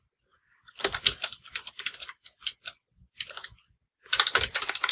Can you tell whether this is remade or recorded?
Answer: recorded